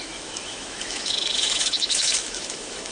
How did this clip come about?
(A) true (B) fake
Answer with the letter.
B